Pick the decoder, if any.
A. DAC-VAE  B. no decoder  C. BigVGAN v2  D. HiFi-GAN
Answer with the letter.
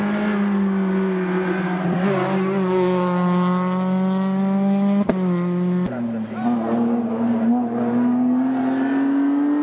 B